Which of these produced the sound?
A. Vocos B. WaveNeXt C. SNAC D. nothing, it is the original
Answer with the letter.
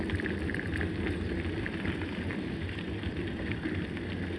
D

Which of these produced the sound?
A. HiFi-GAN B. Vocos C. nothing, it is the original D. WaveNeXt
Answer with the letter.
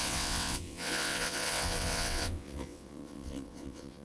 D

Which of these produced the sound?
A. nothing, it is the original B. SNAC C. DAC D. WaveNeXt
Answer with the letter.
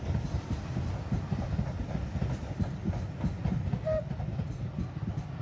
A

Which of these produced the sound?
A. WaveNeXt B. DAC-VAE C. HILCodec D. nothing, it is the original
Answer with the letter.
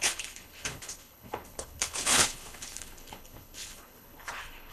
C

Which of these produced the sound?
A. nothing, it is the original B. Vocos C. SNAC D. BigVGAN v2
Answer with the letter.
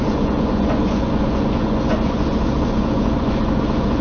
B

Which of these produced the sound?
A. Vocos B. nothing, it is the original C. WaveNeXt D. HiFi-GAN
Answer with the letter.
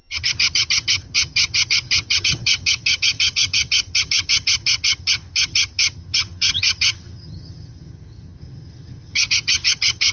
D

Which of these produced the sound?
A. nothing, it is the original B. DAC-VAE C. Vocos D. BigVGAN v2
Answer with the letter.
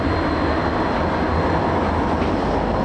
A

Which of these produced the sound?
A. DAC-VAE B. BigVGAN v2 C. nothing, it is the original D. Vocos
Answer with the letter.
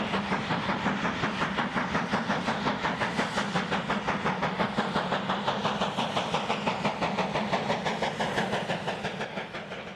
C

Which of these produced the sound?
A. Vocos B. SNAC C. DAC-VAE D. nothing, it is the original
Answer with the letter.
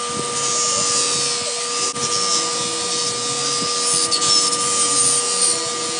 D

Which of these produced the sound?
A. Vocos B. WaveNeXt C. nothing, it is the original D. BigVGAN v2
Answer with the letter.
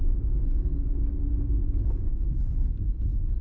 C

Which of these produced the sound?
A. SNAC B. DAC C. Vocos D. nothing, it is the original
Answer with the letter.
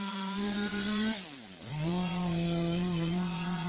C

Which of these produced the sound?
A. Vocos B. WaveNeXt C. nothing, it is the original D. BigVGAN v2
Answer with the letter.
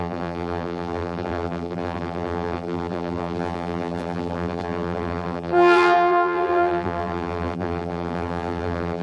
D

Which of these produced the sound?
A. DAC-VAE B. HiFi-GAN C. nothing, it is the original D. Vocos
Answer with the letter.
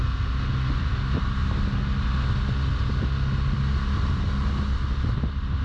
C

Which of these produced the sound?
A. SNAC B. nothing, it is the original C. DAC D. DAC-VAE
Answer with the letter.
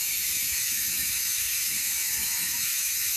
D